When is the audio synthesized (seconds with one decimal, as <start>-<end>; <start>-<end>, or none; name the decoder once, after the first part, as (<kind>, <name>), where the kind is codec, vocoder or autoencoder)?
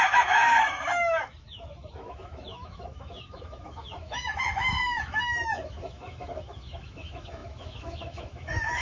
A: 0.0-8.8 (autoencoder, DAC-VAE)